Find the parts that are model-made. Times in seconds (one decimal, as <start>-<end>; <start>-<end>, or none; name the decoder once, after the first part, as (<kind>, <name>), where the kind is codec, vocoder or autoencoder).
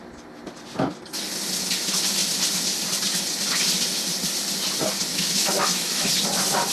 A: 5.1-6.1 (autoencoder, DAC-VAE)